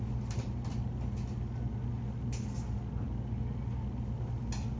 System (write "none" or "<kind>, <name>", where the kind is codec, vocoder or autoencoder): none